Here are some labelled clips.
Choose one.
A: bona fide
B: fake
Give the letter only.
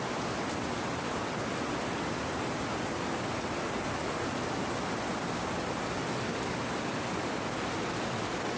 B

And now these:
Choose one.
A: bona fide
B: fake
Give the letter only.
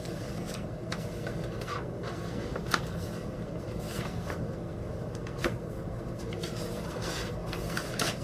B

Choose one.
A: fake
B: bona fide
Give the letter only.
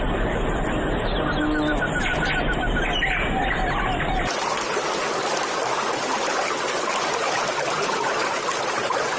B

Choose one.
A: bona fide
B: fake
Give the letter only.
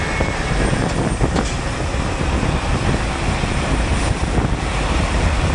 A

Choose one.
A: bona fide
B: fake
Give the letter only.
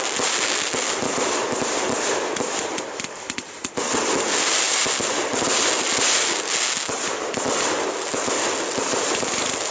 A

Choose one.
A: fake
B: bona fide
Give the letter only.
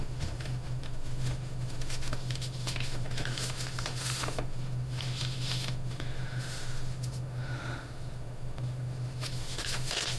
A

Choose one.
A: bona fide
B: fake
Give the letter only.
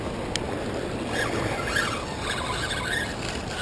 A